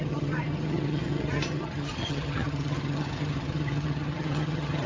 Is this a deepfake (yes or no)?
yes